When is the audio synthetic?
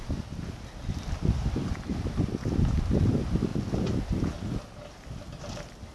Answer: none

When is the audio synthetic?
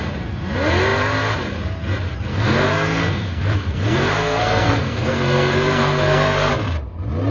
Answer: 2.3-6.5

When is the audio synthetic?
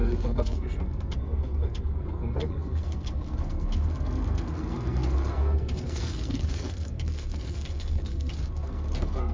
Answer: 0.0-9.3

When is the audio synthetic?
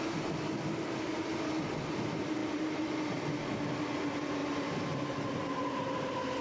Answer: 2.4-2.9; 4.4-5.6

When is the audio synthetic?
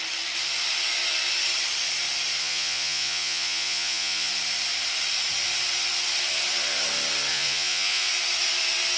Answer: 2.4-4.3; 7.3-8.1